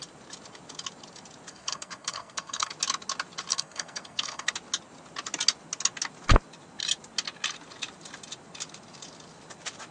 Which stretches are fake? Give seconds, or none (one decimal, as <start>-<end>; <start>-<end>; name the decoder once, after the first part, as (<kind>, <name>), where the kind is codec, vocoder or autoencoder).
1.5-2.7 (codec, SNAC); 3.5-4.5